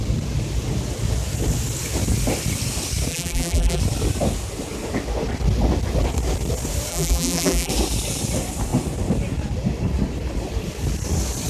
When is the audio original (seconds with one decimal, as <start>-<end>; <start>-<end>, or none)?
0.0-3.1; 3.8-6.9; 7.7-11.5